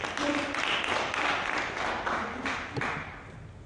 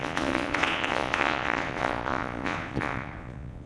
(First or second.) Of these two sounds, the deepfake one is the second